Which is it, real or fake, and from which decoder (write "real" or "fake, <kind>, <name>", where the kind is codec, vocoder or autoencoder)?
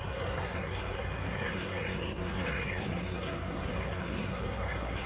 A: fake, codec, SNAC